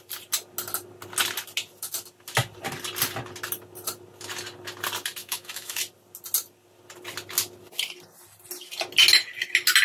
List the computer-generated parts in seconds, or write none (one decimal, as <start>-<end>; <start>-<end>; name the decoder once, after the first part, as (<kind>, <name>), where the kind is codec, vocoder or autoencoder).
5.2-5.8 (autoencoder, DAC-VAE)